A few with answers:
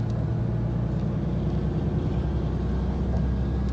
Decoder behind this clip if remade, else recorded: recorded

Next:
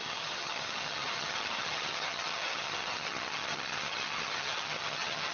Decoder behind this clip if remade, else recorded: remade, vocoder, HiFi-GAN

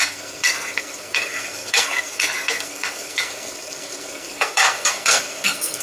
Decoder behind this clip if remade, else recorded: remade, codec, SNAC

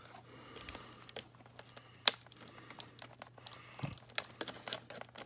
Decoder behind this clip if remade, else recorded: recorded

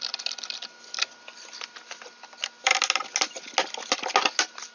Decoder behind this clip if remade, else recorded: recorded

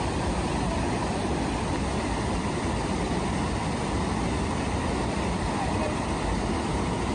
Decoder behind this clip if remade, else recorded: remade, vocoder, BigVGAN v2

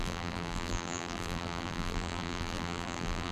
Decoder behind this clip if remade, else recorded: remade, vocoder, BigVGAN v2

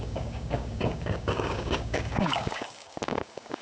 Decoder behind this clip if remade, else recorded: remade, codec, DAC